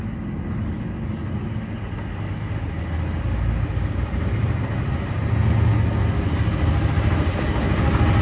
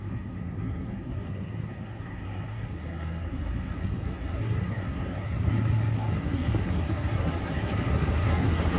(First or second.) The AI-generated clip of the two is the second